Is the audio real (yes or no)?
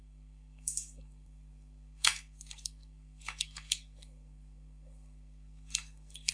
no